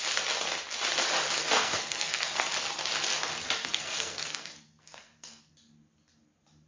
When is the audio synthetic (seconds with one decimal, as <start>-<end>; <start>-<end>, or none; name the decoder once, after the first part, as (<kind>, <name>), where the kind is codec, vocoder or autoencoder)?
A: 1.4-2.4 (codec, SNAC); 3.6-5.5